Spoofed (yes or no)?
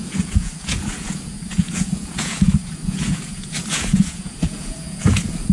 yes